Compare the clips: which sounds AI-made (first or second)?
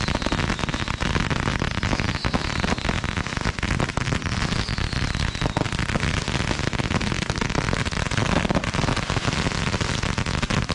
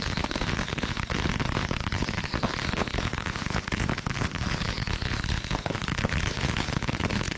second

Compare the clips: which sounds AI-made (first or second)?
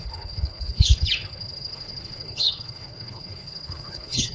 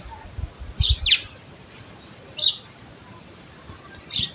first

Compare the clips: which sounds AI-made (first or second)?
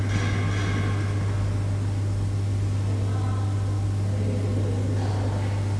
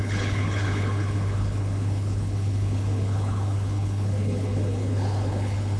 second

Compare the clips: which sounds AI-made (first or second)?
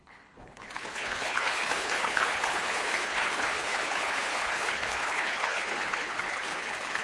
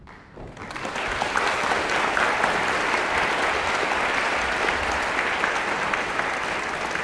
first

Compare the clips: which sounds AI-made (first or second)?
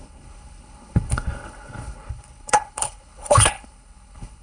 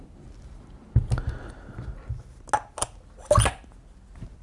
first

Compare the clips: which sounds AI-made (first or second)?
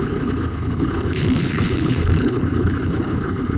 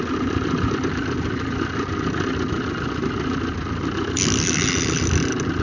first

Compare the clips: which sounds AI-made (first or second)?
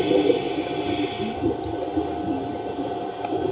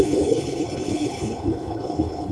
second